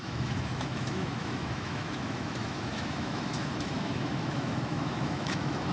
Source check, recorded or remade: remade